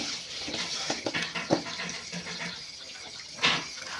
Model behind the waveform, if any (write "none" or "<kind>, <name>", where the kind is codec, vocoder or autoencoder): none